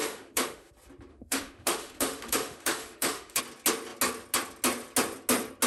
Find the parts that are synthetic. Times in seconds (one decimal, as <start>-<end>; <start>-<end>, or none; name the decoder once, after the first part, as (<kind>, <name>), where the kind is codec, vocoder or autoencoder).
0.0-0.7 (autoencoder, DAC-VAE); 1.1-3.4